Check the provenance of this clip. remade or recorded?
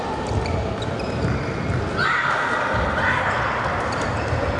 recorded